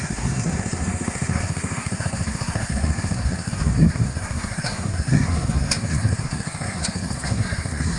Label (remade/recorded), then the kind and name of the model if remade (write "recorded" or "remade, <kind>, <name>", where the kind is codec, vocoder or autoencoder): remade, codec, SNAC